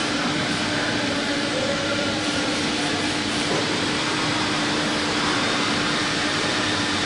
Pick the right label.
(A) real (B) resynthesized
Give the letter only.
B